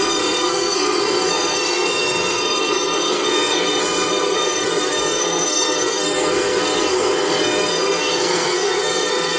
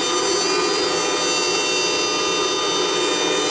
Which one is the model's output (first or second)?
first